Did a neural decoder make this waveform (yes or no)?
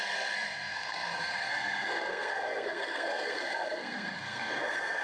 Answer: yes